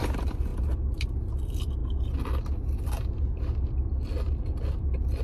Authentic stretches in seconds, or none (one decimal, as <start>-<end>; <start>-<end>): 0.0-5.2